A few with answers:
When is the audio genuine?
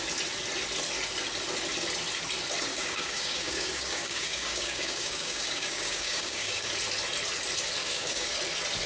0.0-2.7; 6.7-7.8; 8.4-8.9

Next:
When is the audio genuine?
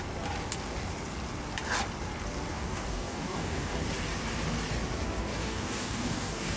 0.0-2.5; 3.8-5.3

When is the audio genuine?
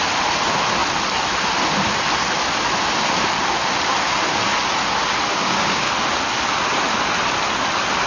0.0-5.3; 5.9-8.1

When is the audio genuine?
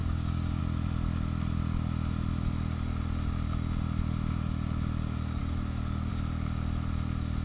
0.6-5.4; 6.1-7.4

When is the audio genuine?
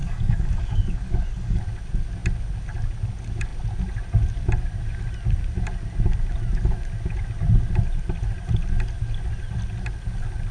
1.6-10.5